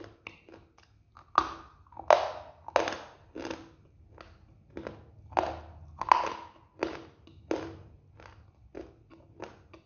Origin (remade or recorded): recorded